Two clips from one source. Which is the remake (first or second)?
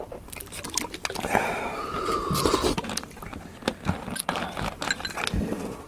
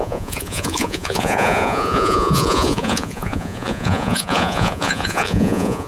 second